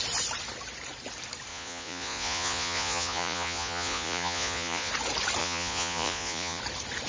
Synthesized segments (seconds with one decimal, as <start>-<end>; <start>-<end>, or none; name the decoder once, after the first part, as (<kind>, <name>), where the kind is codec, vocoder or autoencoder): 1.5-4.9 (vocoder, Vocos); 5.4-6.6